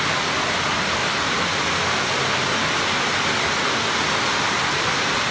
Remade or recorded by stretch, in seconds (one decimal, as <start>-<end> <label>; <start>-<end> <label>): 0.0-5.3 recorded